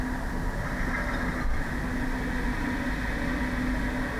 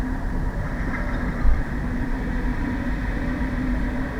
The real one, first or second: first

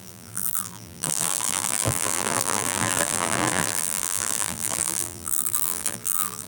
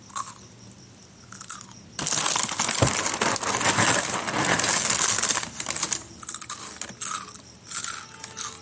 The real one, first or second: second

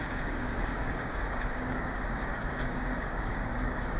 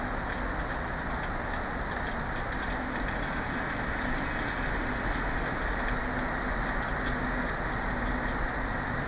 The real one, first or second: second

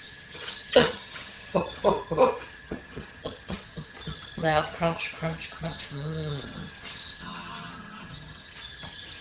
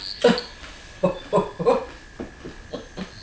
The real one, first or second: second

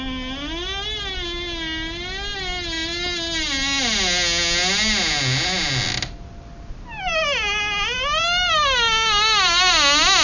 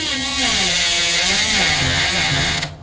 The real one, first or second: first